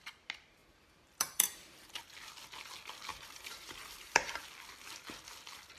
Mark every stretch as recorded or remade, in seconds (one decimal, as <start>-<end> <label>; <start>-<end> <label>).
0.0-0.6 recorded; 0.6-2.0 remade; 2.0-3.1 recorded; 3.1-4.4 remade; 4.4-5.8 recorded